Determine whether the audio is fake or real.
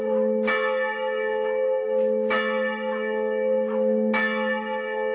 real